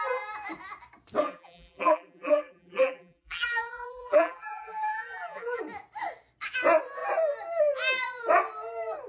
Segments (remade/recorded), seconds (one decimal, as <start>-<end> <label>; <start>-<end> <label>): 0.0-1.2 recorded; 1.2-5.6 remade; 5.6-9.1 recorded